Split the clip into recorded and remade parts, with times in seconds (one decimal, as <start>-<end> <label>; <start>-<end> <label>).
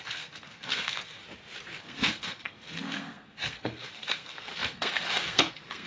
0.0-1.2 remade; 1.2-1.8 recorded; 1.8-5.9 remade